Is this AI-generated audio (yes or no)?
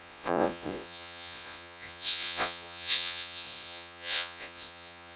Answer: yes